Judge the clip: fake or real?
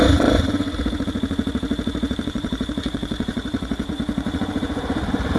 fake